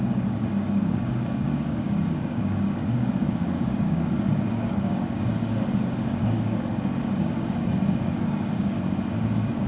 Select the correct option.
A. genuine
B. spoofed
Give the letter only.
B